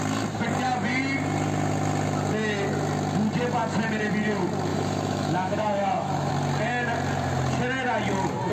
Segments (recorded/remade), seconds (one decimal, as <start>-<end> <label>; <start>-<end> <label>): 0.0-4.7 recorded; 4.7-6.3 remade; 6.3-8.5 recorded